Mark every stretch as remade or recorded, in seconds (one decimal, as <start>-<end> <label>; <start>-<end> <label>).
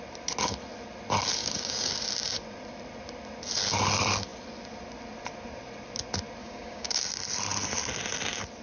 0.0-1.4 recorded; 1.4-1.9 remade; 1.9-6.4 recorded; 6.4-7.0 remade; 7.0-8.6 recorded